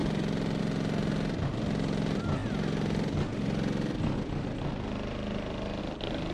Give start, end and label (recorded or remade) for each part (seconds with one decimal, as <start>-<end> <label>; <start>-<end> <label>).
0.0-6.3 recorded